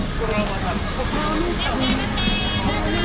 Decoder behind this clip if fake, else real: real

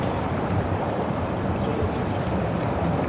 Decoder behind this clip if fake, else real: real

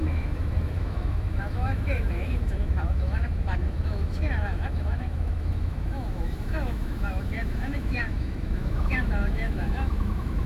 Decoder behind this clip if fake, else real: fake, autoencoder, DAC-VAE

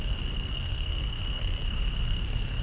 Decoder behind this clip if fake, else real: fake, codec, SNAC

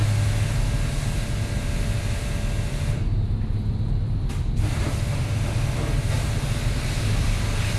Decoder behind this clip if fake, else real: real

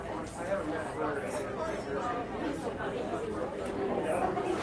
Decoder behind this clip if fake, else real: real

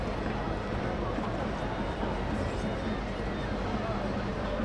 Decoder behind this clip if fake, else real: real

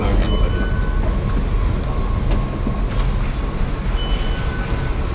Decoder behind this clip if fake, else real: real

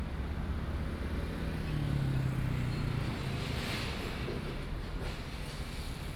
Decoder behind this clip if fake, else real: real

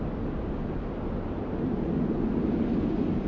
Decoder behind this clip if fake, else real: real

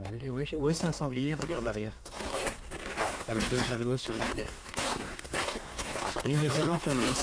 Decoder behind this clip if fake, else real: fake, codec, SNAC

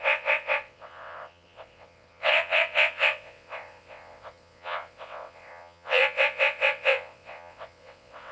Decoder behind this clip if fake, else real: fake, vocoder, WaveNeXt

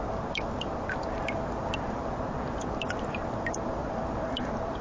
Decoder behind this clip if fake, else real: fake, vocoder, BigVGAN v2